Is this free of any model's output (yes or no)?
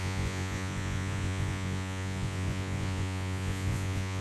no